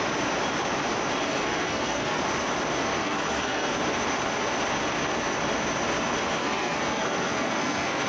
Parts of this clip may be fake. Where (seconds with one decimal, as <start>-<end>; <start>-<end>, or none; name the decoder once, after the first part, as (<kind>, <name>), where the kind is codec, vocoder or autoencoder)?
1.3-2.2 (codec, SNAC); 3.0-3.7; 6.4-8.1